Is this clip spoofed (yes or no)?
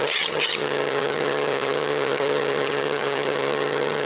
yes